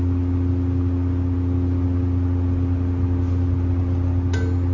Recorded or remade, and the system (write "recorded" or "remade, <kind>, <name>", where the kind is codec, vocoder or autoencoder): recorded